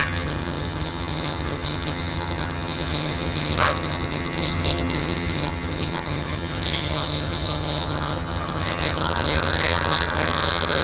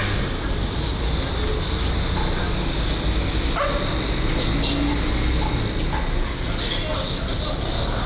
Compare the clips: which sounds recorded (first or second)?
second